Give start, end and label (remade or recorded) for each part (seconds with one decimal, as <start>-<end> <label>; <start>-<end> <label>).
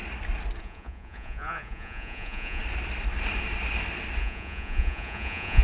0.0-0.6 recorded; 0.6-2.6 remade; 2.6-4.2 recorded; 4.2-5.6 remade